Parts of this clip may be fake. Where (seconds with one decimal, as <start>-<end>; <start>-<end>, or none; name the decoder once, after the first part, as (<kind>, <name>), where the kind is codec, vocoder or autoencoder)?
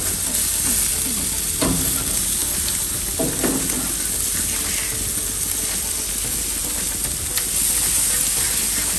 none